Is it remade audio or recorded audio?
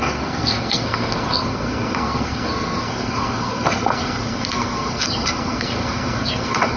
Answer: remade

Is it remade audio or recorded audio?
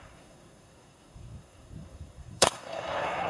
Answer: remade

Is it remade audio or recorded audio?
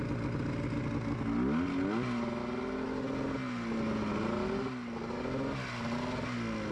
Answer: recorded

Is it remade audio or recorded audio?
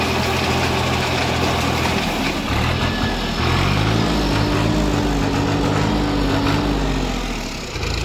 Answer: recorded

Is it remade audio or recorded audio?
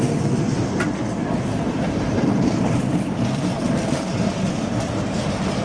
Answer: recorded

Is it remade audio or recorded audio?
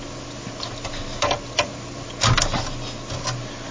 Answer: recorded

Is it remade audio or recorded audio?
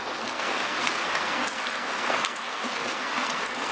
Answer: remade